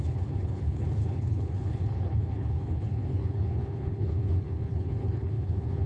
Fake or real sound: fake